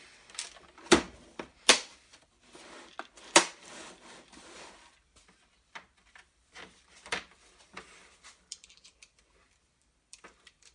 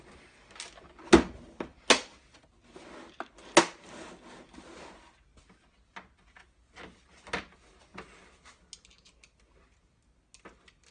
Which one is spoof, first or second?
first